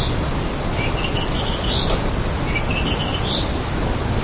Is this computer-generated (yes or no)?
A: no